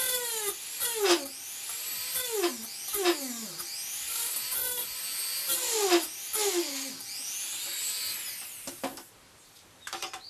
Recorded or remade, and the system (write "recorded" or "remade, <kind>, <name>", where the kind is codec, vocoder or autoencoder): recorded